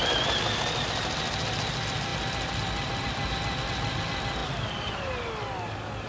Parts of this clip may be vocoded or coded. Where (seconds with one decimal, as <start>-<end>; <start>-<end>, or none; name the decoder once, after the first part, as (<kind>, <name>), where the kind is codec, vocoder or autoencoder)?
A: none